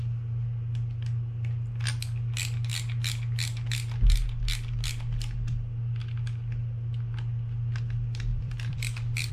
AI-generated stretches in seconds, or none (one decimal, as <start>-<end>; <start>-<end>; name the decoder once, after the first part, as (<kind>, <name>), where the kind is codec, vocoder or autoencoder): 8.3-9.3 (vocoder, BigVGAN v2)